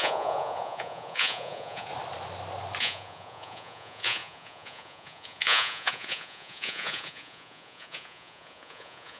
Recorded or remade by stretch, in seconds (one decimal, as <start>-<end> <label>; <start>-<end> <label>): 0.0-1.9 remade; 1.9-2.8 recorded; 2.8-9.2 remade